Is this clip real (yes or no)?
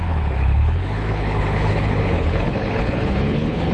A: no